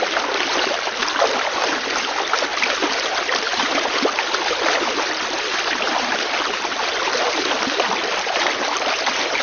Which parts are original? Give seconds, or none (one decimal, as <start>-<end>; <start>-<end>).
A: 0.0-9.4